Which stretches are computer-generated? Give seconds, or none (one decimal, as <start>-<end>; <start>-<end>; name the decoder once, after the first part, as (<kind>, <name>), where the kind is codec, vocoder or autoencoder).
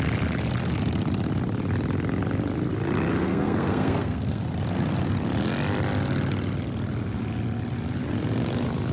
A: 3.1-4.4 (codec, SNAC)